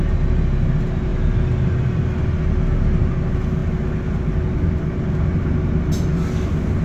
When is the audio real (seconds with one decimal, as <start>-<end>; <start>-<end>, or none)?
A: 0.0-6.8